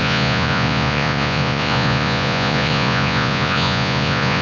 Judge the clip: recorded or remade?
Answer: remade